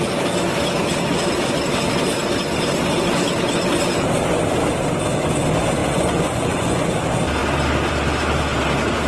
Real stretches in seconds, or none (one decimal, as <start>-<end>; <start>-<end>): 0.0-5.8; 6.9-9.1